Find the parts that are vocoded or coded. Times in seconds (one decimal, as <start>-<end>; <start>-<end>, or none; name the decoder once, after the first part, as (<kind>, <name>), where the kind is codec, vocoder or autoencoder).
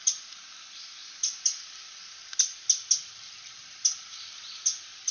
none